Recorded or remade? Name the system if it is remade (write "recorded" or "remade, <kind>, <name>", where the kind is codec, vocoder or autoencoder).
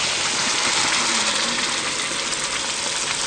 recorded